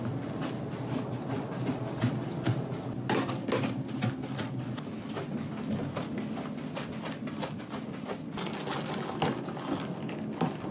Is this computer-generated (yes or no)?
no